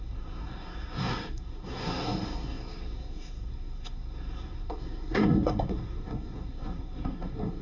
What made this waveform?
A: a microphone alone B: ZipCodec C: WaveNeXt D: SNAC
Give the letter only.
D